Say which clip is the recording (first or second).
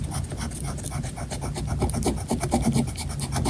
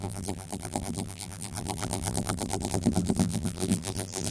first